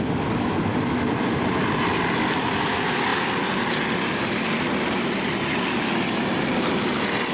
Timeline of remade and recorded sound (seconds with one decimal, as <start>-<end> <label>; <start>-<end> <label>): 0.0-7.3 recorded

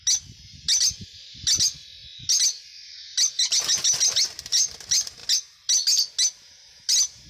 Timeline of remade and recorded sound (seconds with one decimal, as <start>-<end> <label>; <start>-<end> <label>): 0.0-7.3 recorded

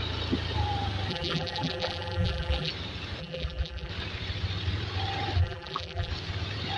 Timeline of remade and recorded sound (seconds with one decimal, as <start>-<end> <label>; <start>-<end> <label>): 0.0-1.1 recorded; 1.1-2.7 remade; 2.7-3.2 recorded; 3.2-3.9 remade; 3.9-5.4 recorded; 5.4-6.1 remade; 6.1-6.8 recorded